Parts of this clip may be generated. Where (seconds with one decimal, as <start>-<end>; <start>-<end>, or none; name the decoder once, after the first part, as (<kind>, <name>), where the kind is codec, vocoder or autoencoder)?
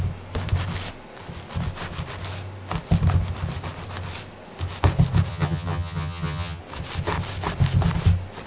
5.3-6.6 (vocoder, HiFi-GAN)